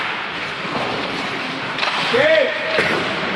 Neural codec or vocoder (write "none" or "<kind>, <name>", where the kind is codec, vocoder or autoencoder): vocoder, BigVGAN v2